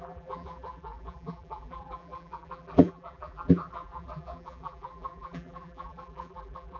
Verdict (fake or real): fake